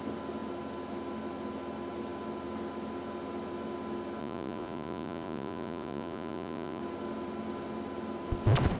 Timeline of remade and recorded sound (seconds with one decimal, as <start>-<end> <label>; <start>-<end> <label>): 0.0-4.2 recorded; 4.2-6.8 remade; 6.8-8.8 recorded